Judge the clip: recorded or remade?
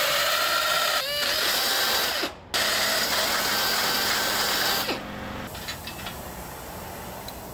recorded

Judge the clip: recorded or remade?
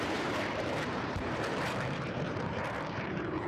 remade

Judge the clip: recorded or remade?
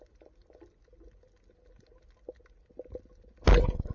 recorded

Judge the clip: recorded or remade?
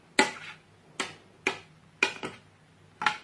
recorded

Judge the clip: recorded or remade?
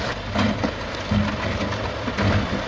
recorded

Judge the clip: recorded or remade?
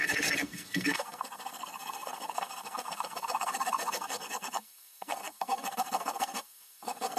remade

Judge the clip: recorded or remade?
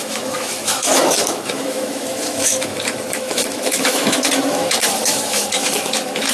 remade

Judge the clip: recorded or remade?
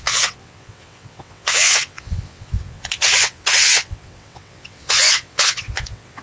remade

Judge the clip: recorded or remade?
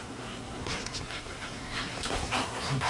remade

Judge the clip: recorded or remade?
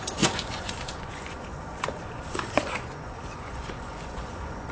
remade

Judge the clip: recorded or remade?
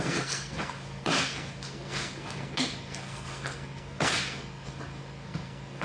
remade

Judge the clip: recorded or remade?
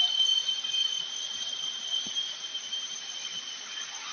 recorded